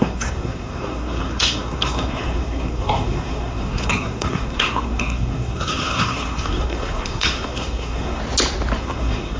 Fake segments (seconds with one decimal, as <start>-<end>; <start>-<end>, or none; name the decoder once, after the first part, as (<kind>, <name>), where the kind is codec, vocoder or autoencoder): 0.0-8.2 (codec, SNAC); 8.8-9.4